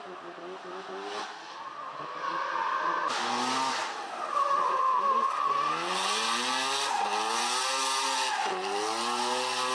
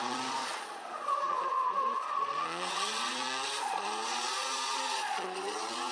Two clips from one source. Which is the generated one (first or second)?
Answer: second